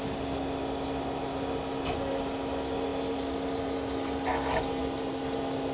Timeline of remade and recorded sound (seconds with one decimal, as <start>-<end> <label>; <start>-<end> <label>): 0.0-5.7 recorded